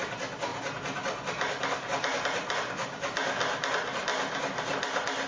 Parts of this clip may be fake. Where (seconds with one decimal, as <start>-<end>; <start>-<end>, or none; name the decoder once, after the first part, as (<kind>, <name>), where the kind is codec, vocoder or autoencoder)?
none

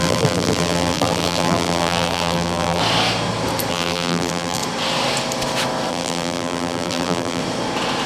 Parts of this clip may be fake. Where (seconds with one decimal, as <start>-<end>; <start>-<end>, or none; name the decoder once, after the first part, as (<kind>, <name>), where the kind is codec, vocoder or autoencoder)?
0.0-2.8 (vocoder, BigVGAN v2); 3.7-4.6; 5.9-7.4

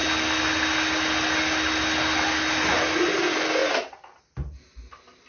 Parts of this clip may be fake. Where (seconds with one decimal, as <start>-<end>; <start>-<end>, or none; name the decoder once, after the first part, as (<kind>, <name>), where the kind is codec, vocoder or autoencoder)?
none

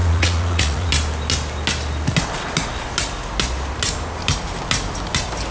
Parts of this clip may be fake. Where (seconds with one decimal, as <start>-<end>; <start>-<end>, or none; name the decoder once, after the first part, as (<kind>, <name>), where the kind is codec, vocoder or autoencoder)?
0.0-0.9 (vocoder, Vocos)

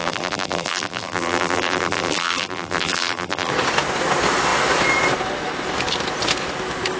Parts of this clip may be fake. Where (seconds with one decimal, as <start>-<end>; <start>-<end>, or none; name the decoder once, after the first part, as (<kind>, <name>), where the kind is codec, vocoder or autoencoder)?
0.0-3.5 (vocoder, BigVGAN v2)

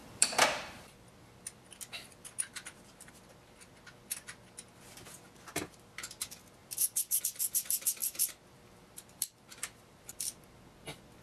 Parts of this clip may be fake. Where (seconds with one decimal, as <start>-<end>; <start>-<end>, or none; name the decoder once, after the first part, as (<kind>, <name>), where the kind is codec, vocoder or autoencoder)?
0.0-3.1 (vocoder, BigVGAN v2); 6.6-7.2; 8.0-10.6